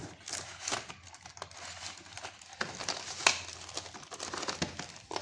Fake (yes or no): no